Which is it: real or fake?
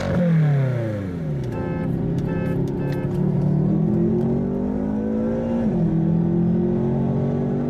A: real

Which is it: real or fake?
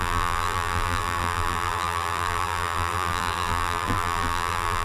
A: fake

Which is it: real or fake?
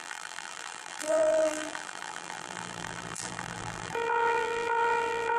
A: fake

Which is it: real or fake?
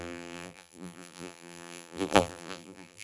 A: fake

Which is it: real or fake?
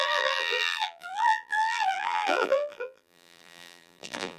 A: fake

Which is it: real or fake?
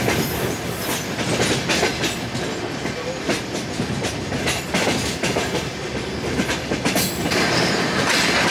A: real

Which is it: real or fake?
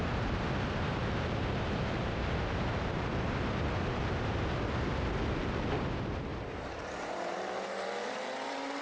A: fake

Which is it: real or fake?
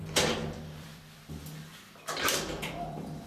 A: fake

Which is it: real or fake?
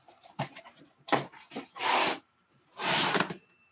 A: fake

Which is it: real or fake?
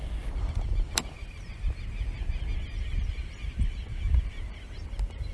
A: fake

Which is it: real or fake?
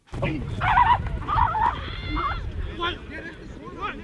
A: real